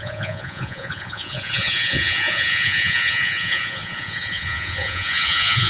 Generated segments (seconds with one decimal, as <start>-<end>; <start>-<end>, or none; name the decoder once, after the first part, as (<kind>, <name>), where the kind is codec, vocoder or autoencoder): 0.0-5.7 (vocoder, Vocos)